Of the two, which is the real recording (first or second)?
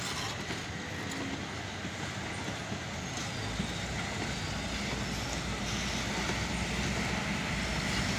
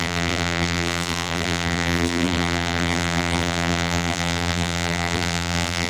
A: first